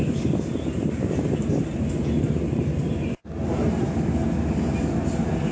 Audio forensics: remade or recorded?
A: recorded